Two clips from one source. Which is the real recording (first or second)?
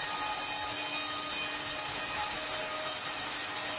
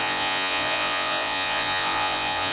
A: first